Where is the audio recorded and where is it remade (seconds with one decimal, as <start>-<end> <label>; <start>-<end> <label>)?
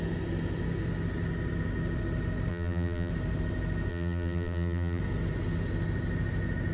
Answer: 0.0-2.5 recorded; 2.5-3.1 remade; 3.1-3.9 recorded; 3.9-5.0 remade; 5.0-6.7 recorded